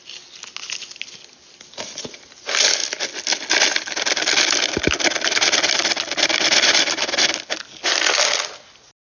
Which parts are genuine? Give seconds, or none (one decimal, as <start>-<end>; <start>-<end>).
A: 0.0-9.1